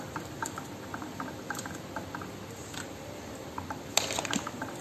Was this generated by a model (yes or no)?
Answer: no